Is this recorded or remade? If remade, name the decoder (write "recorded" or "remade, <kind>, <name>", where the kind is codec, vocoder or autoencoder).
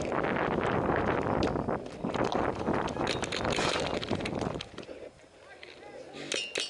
recorded